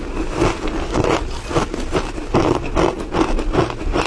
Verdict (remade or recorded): recorded